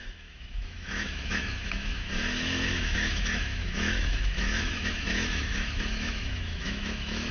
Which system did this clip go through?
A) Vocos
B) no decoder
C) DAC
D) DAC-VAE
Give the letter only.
D